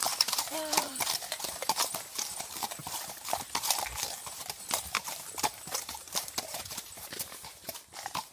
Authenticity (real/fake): fake